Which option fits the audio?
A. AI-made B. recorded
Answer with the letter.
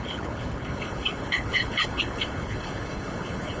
A